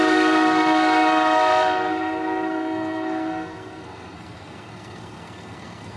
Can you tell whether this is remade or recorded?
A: remade